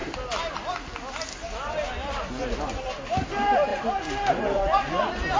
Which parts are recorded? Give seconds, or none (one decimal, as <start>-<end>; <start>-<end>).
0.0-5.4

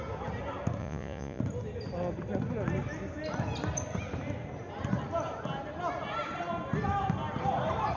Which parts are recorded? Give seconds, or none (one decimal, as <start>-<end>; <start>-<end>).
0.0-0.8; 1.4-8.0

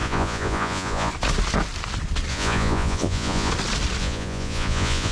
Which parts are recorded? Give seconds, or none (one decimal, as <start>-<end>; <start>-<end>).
1.1-2.3; 3.5-4.0

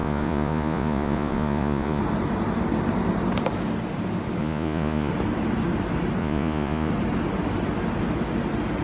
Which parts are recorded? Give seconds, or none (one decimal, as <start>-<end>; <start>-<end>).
2.0-4.4; 5.1-6.2; 6.9-8.8